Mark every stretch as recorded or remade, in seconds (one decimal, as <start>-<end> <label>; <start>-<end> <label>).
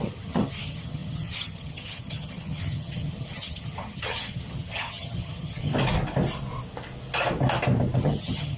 0.0-5.7 remade; 5.7-8.0 recorded; 8.0-8.6 remade